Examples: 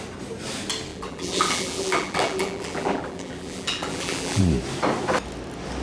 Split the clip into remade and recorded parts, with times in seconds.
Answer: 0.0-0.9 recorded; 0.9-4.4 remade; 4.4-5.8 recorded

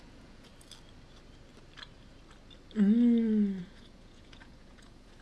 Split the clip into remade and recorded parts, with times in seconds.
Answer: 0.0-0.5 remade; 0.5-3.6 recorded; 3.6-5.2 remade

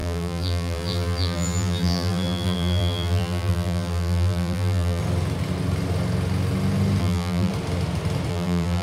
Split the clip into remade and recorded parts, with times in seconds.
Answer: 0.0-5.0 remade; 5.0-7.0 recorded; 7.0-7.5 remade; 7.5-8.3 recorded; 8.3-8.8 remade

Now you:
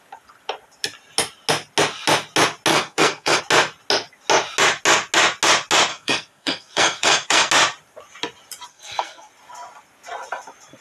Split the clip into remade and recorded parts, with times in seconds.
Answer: 0.0-2.7 recorded; 2.7-3.4 remade; 3.4-5.9 recorded; 5.9-7.5 remade; 7.5-8.7 recorded; 8.7-9.3 remade; 9.3-10.8 recorded

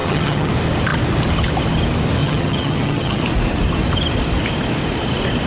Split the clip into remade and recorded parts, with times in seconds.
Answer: 0.0-0.5 remade; 0.5-2.2 recorded; 2.2-3.2 remade; 3.2-5.5 recorded